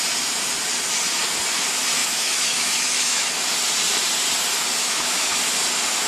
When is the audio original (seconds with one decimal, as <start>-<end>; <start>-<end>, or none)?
0.0-2.0; 3.3-4.8; 5.4-6.1

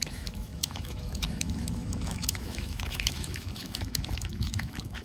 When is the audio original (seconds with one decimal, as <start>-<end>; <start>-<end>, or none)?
none

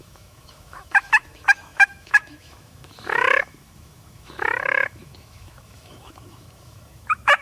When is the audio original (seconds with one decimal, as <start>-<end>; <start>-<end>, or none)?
none

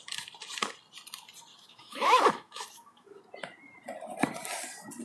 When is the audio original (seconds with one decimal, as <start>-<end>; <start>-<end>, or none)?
0.0-1.5; 3.2-5.0

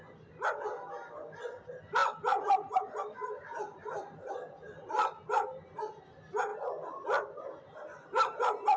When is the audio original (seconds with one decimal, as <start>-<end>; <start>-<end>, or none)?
0.0-8.8

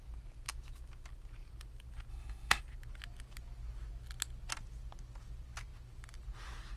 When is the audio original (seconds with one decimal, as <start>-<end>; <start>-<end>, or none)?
0.0-2.1; 2.6-6.8